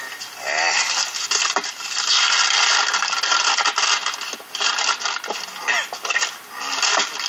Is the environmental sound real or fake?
real